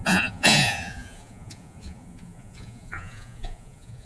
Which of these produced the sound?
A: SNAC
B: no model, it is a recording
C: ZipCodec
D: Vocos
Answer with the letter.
D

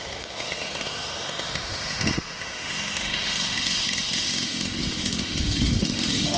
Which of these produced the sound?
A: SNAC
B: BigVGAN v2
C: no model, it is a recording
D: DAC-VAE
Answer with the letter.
D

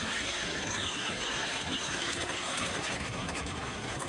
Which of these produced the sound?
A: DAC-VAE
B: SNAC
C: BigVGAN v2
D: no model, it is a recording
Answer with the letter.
B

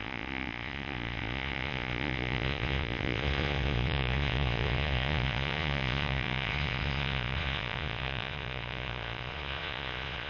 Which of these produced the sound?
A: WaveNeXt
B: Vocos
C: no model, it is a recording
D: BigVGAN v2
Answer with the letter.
B